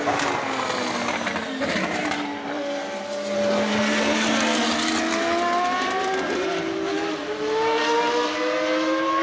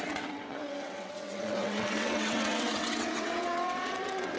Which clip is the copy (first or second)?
second